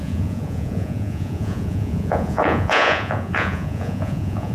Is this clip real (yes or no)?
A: no